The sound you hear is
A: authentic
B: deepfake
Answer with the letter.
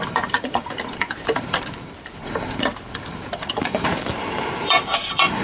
B